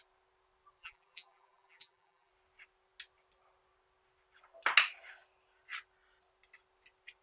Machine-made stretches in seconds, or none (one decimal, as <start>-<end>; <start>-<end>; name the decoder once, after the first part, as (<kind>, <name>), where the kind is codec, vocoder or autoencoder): 0.8-2.3 (vocoder, BigVGAN v2)